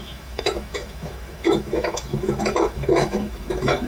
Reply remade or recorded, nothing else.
remade